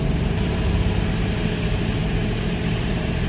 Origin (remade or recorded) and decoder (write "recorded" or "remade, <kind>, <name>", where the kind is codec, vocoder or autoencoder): remade, vocoder, BigVGAN v2